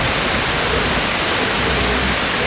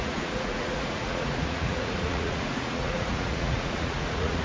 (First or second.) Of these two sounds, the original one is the first